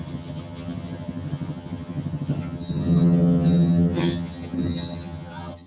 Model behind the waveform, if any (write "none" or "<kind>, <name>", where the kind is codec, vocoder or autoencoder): vocoder, HiFi-GAN